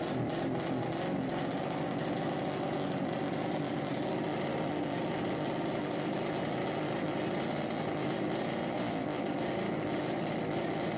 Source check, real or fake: real